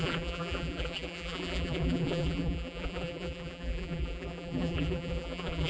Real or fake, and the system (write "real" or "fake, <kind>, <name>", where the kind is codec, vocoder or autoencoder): fake, vocoder, BigVGAN v2